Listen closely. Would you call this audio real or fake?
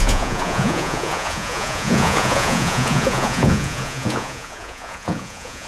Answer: fake